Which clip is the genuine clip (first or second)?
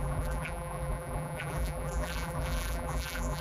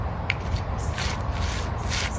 second